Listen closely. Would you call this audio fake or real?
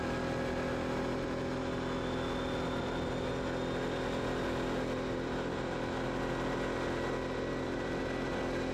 real